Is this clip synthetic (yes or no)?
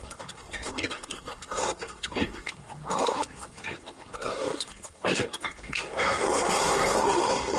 yes